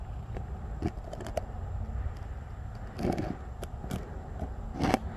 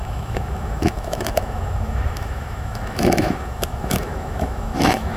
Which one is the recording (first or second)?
first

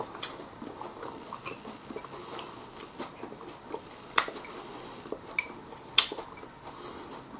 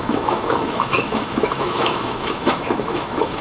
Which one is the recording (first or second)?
first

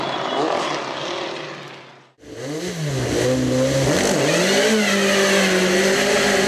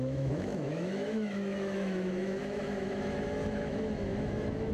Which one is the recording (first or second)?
first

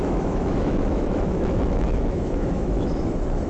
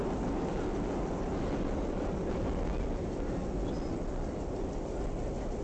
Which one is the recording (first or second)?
second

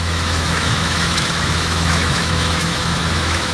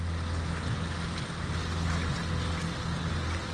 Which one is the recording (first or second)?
second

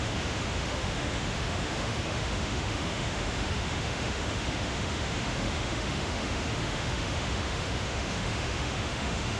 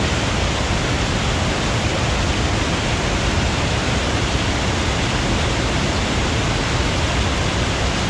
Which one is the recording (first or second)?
second